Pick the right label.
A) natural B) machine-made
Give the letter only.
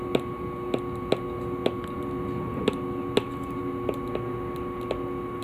A